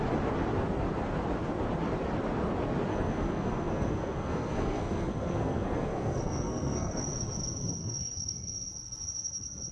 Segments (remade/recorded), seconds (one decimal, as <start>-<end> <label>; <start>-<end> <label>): 0.0-2.9 recorded; 2.9-6.9 remade; 6.9-7.8 recorded; 7.8-8.7 remade; 8.7-9.7 recorded